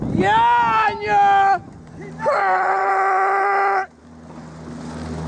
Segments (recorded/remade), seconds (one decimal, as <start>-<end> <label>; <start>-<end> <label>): 0.0-2.4 recorded; 2.4-2.9 remade; 2.9-5.3 recorded